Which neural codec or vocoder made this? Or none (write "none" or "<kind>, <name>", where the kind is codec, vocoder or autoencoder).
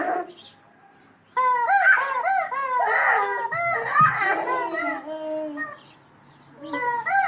none